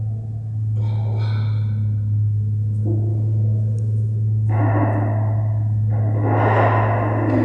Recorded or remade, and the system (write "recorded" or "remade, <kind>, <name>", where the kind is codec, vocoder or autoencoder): recorded